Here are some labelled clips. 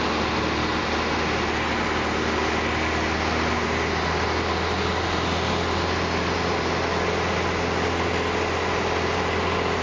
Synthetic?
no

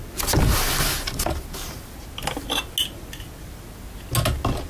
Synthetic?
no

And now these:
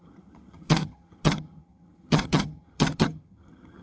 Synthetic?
yes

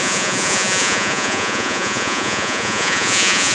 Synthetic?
yes